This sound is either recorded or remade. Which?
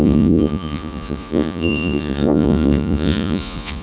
remade